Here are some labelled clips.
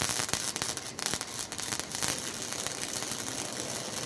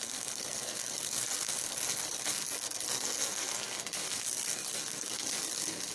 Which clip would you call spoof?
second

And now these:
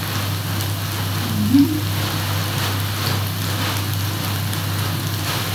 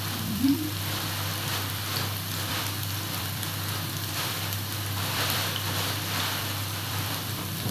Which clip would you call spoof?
second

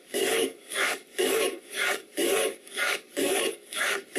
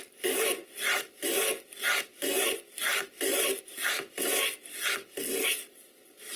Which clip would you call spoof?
first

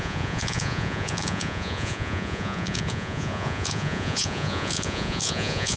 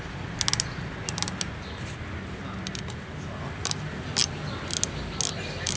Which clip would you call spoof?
first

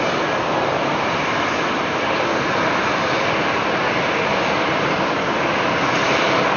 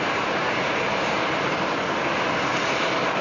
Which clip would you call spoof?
first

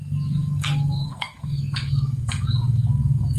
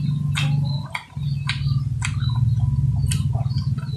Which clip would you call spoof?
first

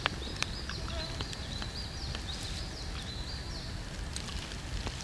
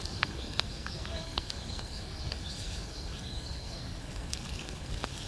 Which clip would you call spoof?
second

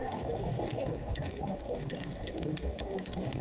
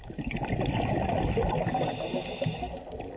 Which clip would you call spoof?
first